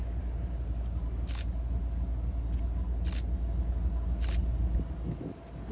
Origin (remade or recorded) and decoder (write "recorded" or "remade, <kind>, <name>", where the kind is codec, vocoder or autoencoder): recorded